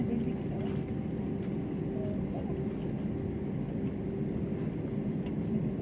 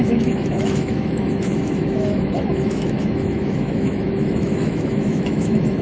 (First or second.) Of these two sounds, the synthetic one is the second